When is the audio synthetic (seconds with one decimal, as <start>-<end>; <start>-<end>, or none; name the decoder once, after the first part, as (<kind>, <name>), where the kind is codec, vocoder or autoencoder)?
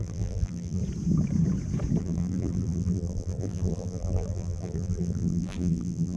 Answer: 0.0-0.8 (vocoder, BigVGAN v2); 2.0-6.2